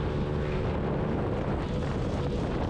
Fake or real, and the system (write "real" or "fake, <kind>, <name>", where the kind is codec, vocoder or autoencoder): real